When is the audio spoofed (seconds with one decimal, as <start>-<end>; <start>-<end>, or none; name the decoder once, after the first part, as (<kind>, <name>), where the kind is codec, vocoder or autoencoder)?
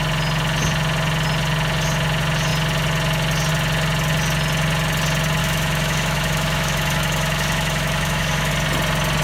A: 5.4-8.5 (autoencoder, DAC-VAE)